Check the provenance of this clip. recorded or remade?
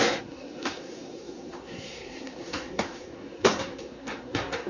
remade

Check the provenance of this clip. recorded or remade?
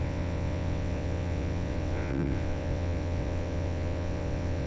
remade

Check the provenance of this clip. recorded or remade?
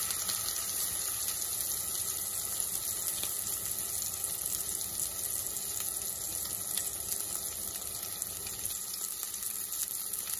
recorded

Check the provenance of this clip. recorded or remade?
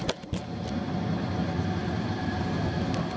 recorded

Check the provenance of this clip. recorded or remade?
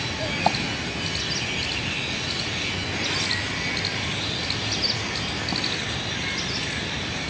recorded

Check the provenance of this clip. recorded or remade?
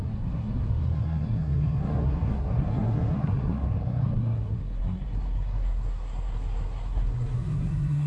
remade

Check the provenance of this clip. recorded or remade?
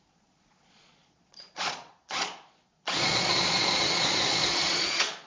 remade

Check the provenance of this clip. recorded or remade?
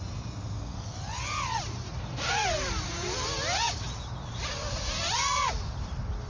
recorded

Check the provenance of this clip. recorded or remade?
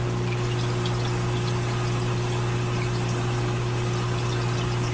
recorded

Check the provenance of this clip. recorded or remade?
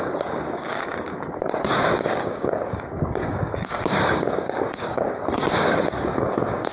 remade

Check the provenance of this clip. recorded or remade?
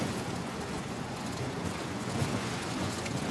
remade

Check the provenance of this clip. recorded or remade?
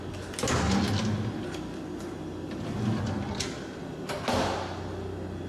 recorded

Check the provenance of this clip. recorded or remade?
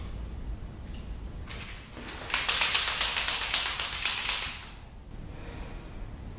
recorded